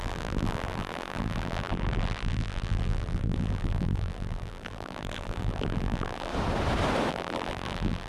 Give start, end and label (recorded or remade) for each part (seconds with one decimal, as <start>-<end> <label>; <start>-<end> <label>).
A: 0.0-6.3 remade; 6.3-7.1 recorded; 7.1-8.1 remade